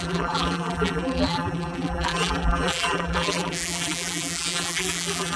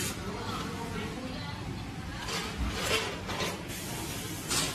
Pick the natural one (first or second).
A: second